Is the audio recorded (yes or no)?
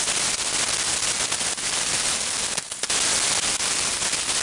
yes